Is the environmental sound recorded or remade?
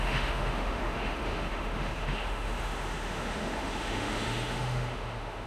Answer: remade